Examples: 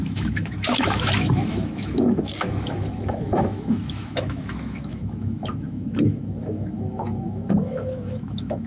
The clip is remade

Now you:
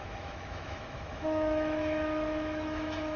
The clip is remade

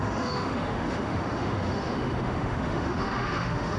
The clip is remade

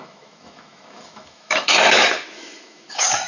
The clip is remade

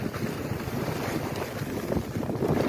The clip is recorded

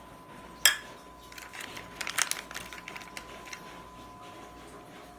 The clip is recorded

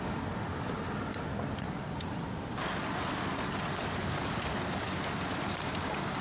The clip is recorded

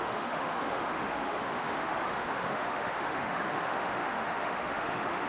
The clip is remade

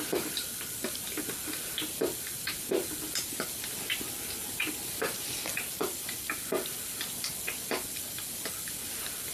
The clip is recorded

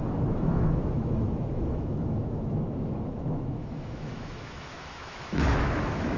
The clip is remade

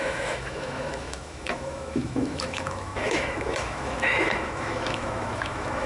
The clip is remade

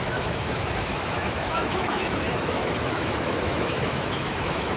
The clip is remade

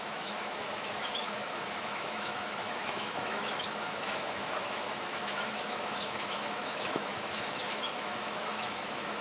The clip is remade